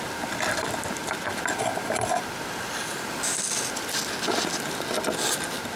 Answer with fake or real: real